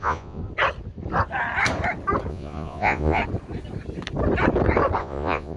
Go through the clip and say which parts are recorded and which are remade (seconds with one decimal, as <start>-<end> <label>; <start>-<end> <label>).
0.0-0.4 remade; 0.4-2.3 recorded; 2.3-3.2 remade; 3.2-5.0 recorded; 5.0-5.6 remade